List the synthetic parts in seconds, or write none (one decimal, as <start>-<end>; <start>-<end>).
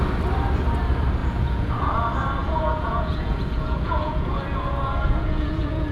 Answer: 1.2-2.0; 2.4-5.9